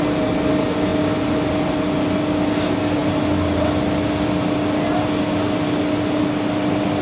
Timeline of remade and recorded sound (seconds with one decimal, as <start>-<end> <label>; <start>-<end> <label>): 0.0-7.0 recorded